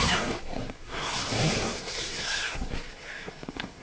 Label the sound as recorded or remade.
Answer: remade